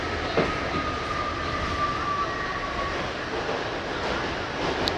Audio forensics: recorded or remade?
recorded